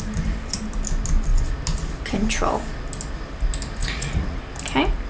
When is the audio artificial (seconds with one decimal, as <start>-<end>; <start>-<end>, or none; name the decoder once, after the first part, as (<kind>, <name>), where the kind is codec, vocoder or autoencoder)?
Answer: 3.8-4.4 (vocoder, Vocos)